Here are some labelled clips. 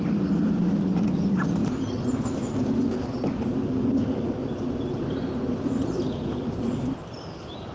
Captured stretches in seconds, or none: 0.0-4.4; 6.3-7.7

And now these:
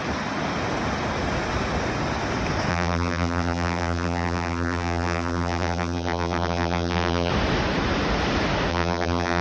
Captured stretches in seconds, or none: 0.0-2.7; 7.3-8.7

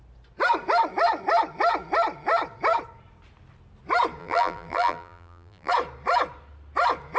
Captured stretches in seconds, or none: 0.0-4.2; 5.7-7.2

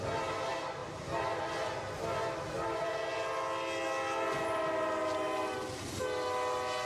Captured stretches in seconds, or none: 0.0-0.8; 1.4-6.9

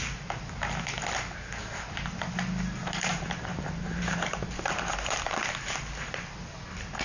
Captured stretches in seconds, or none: 0.0-3.1; 5.5-7.0

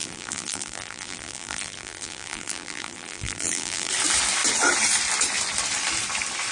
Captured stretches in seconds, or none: 3.9-6.5

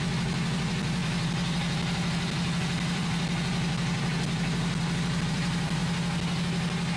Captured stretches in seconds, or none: 5.8-7.0